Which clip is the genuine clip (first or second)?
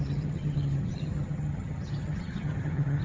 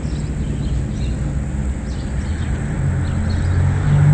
second